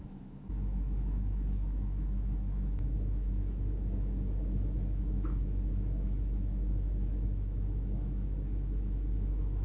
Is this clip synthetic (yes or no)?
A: yes